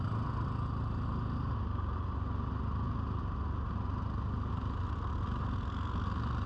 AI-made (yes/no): no